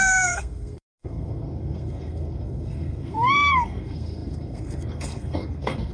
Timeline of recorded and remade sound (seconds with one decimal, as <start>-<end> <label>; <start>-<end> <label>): 0.0-5.9 remade